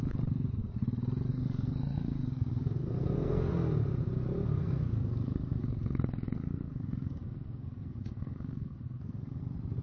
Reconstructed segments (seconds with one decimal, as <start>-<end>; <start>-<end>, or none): 1.3-3.5; 4.6-9.4